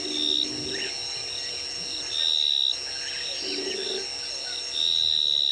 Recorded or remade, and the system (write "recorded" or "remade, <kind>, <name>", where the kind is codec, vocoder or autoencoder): recorded